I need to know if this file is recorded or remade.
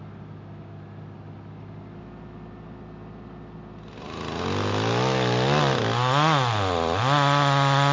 recorded